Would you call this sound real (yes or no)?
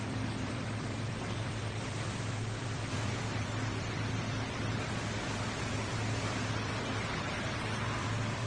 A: no